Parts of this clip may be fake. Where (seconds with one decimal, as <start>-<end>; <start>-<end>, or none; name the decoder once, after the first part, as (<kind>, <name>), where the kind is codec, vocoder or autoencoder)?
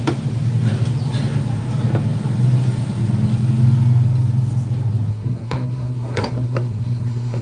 5.1-7.4 (codec, SNAC)